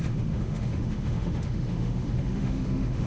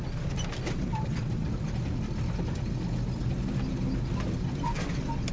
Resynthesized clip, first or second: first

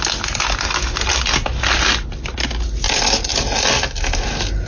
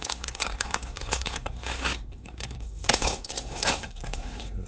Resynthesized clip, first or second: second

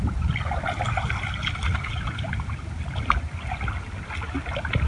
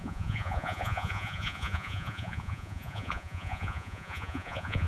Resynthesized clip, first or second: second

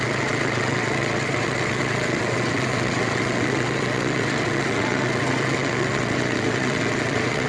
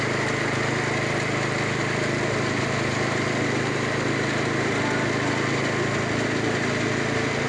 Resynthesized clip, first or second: first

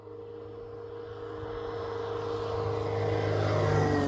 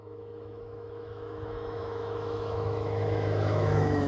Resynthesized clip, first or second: second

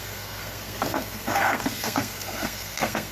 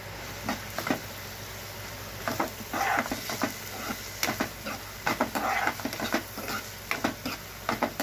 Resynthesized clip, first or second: first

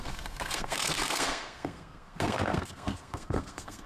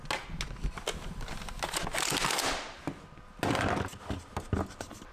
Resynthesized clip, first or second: first